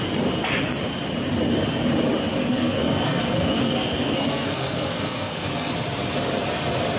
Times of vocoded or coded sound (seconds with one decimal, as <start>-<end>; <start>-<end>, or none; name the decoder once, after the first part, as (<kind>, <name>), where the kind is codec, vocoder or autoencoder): 2.4-5.7 (codec, SNAC)